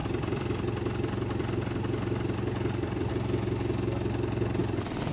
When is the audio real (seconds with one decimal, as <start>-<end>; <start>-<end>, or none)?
3.1-4.6